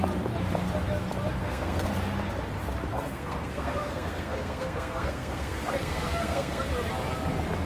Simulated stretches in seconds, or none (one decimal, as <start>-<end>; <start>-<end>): 1.4-1.9; 2.9-6.6